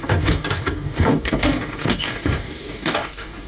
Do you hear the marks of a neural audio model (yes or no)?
yes